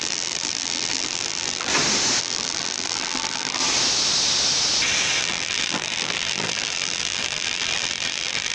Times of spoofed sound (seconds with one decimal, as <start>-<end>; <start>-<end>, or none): 0.0-1.7; 2.2-3.6; 5.2-8.5

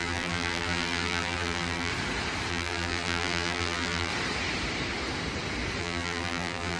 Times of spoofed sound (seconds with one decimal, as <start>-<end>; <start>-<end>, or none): 0.0-1.9; 2.5-4.1; 5.8-6.8